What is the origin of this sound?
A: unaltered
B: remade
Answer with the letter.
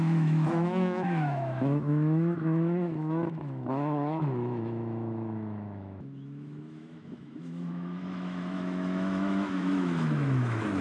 B